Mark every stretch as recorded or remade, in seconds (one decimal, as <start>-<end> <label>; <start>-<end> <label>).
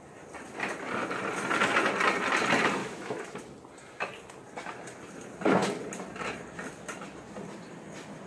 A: 0.0-2.8 recorded; 2.8-3.3 remade; 3.3-8.3 recorded